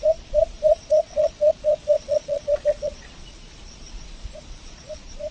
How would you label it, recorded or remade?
remade